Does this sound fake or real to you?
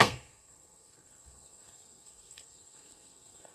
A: fake